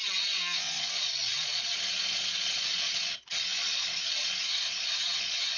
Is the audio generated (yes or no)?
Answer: yes